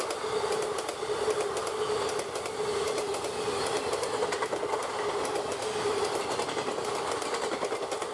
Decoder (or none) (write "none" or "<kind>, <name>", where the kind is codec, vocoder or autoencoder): none